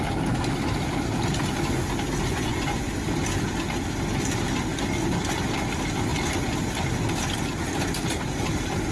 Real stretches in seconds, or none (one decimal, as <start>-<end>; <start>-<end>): 0.0-2.3; 2.9-8.9